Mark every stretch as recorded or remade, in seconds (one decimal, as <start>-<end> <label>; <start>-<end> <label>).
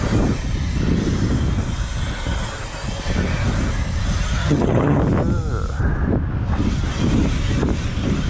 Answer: 0.0-4.4 recorded; 4.4-5.0 remade; 5.0-8.3 recorded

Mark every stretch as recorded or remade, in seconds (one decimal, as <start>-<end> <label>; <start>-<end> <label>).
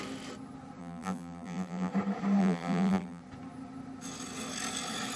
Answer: 0.0-0.8 recorded; 0.8-1.9 remade; 1.9-2.4 recorded; 2.4-3.2 remade; 3.2-5.2 recorded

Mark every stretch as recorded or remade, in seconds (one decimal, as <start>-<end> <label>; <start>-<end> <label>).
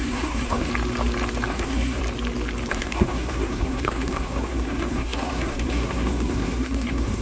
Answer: 0.0-0.7 remade; 0.7-1.5 recorded; 1.5-2.0 remade; 2.0-2.7 recorded; 2.7-7.2 remade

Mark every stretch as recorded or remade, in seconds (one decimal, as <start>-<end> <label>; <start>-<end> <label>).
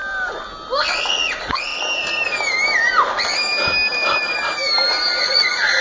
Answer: 0.0-1.0 recorded; 1.0-1.7 remade; 1.7-5.2 recorded; 5.2-5.8 remade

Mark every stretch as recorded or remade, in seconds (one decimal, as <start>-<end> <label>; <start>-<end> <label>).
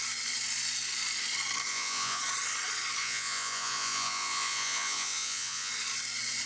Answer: 0.0-1.7 recorded; 1.7-2.2 remade; 2.2-3.0 recorded; 3.0-5.7 remade; 5.7-6.5 recorded